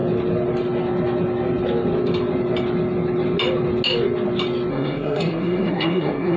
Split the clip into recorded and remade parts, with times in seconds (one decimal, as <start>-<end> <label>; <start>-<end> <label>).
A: 0.0-4.7 recorded; 4.7-6.4 remade